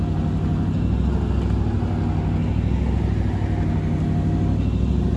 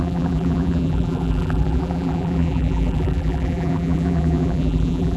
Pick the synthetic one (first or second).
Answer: second